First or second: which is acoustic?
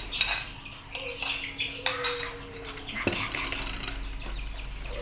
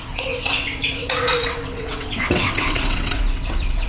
first